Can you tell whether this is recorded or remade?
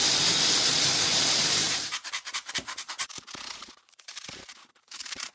remade